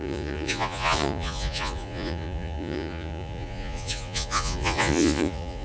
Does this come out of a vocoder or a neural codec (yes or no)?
yes